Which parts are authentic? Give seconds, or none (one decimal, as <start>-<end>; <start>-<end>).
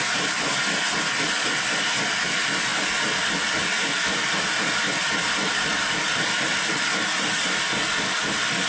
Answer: 0.0-8.7